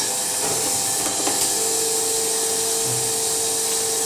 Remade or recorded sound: recorded